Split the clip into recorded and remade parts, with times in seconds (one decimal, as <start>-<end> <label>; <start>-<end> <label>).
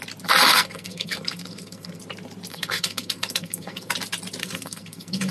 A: 0.0-0.5 recorded; 0.5-2.0 remade; 2.0-2.5 recorded; 2.5-3.9 remade; 3.9-4.4 recorded; 4.4-5.3 remade